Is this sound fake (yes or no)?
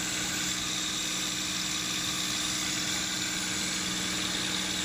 no